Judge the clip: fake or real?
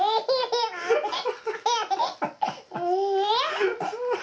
real